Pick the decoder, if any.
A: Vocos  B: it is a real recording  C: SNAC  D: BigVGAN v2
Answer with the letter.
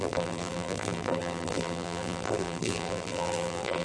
D